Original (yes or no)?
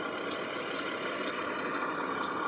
yes